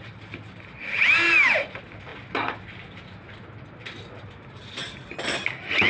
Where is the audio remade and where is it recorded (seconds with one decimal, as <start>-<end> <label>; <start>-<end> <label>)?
0.0-5.9 recorded